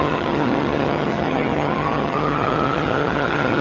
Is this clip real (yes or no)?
no